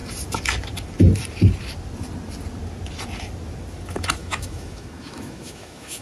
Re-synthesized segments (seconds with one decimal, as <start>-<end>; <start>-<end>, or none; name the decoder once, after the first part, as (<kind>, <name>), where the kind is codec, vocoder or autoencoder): 4.2-6.0 (autoencoder, DAC-VAE)